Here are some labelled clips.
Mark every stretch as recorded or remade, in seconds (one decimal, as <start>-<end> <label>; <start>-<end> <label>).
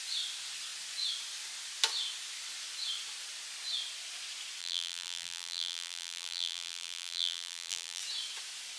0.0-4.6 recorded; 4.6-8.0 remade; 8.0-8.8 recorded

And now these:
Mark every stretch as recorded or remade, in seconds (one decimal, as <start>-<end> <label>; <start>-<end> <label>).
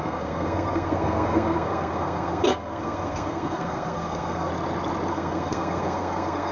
0.0-4.5 remade; 4.5-5.1 recorded; 5.1-6.5 remade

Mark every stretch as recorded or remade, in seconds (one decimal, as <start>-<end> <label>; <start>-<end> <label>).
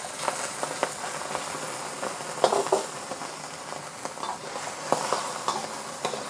0.0-6.3 recorded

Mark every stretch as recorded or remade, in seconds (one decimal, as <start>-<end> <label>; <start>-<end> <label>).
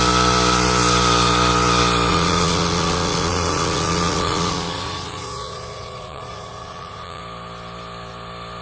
0.0-2.1 recorded; 2.1-7.2 remade; 7.2-8.6 recorded